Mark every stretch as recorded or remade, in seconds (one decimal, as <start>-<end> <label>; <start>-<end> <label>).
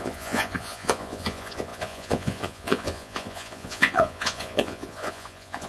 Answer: 0.0-5.7 remade